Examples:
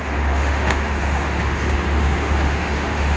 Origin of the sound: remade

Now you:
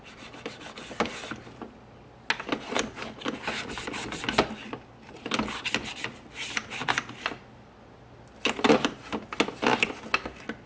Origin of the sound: recorded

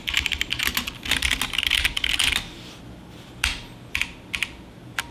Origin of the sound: recorded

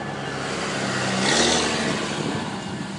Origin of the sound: recorded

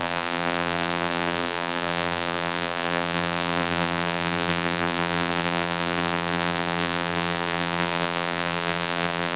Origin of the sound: remade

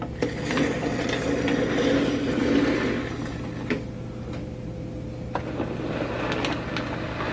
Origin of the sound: recorded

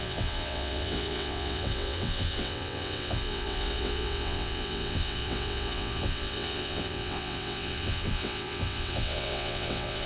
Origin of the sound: remade